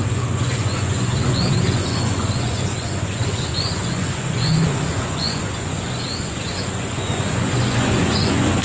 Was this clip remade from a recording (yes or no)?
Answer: yes